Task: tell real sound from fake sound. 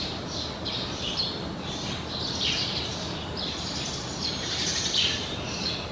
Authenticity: real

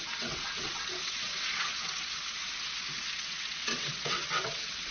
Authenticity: fake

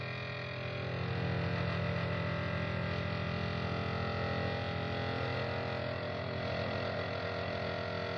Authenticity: real